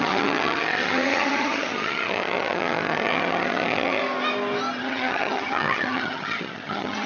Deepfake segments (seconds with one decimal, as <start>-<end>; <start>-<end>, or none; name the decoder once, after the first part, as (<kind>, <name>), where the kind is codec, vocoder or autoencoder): 0.0-4.0 (vocoder, HiFi-GAN); 4.8-7.1

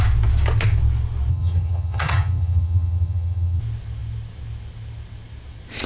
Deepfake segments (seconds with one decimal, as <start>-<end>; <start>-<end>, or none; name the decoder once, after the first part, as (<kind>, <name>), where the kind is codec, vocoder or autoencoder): 1.3-3.6 (vocoder, HiFi-GAN)

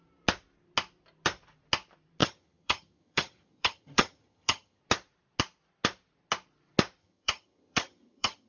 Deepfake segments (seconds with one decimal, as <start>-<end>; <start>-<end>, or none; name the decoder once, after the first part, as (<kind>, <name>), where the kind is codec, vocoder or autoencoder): 2.2-4.8 (vocoder, HiFi-GAN); 7.0-8.5

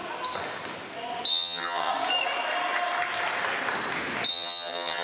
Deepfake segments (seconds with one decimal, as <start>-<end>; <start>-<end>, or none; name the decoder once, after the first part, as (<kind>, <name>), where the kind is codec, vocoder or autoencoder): 1.3-1.9 (vocoder, HiFi-GAN); 4.3-5.0

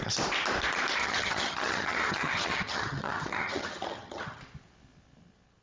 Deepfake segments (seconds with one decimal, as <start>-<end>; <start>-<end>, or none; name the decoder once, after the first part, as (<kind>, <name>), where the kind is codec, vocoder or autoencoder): 1.0-4.4 (vocoder, HiFi-GAN)